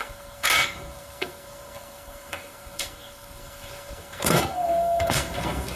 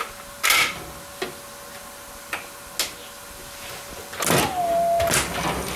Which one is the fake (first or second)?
first